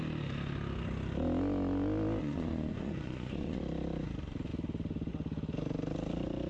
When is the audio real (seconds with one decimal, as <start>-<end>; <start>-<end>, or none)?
0.0-2.2; 3.6-6.5